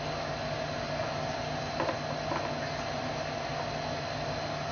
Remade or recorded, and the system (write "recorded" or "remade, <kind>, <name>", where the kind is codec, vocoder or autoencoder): recorded